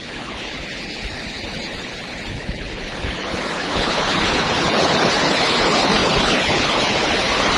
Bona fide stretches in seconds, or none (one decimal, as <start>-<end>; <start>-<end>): none